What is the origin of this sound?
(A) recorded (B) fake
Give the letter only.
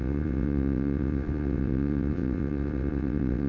B